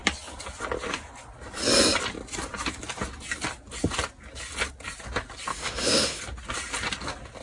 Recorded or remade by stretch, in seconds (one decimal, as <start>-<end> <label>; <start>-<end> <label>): 0.0-5.5 recorded; 5.5-6.2 remade; 6.2-7.4 recorded